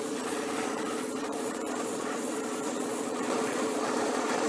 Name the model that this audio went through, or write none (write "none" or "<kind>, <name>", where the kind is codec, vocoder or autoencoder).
vocoder, Vocos